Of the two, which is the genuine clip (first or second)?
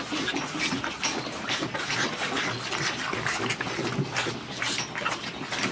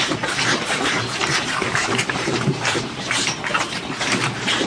first